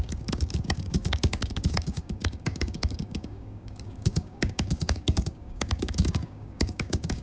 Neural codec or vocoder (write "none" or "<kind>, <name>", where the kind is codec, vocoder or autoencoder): codec, DAC